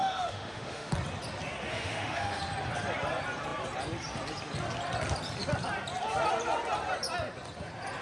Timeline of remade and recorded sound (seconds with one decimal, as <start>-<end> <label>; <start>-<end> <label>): 0.0-0.9 remade; 0.9-1.7 recorded; 1.7-2.4 remade; 2.4-8.0 recorded